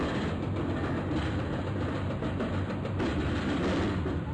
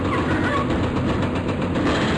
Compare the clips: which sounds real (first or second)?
second